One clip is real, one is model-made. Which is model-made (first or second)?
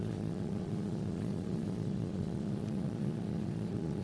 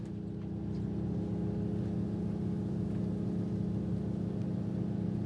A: first